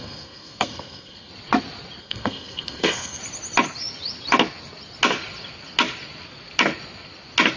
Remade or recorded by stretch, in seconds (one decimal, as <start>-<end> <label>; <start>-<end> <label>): 0.0-1.3 remade; 1.3-2.0 recorded; 2.0-3.2 remade; 3.2-7.6 recorded